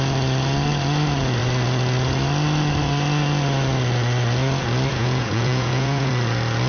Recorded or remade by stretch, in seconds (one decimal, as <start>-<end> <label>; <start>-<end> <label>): 0.0-4.9 recorded; 4.9-6.1 remade; 6.1-6.7 recorded